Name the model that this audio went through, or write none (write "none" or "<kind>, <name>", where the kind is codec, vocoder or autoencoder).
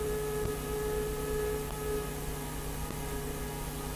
vocoder, BigVGAN v2